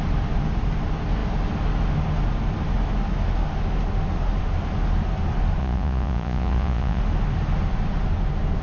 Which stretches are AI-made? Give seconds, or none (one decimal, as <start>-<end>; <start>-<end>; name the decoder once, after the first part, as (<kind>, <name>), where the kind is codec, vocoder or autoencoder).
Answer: 5.6-7.0 (vocoder, Vocos)